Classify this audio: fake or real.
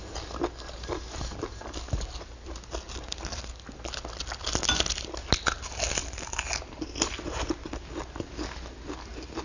real